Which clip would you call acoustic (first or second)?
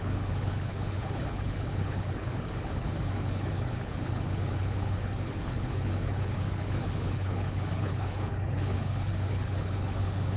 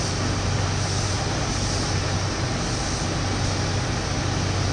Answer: second